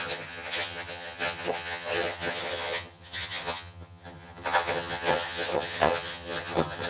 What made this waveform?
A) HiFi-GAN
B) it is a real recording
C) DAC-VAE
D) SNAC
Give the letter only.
A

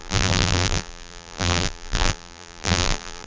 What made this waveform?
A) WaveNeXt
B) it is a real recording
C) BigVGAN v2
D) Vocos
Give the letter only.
C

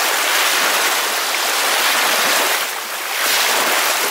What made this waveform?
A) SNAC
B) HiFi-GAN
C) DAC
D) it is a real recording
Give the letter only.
D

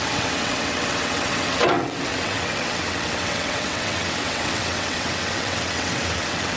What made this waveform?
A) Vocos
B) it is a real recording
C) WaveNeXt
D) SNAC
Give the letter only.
C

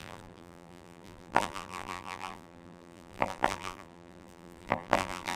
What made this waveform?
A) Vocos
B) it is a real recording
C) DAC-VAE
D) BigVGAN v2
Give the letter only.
D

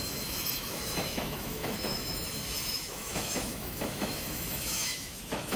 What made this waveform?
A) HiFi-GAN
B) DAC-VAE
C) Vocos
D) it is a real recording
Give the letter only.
B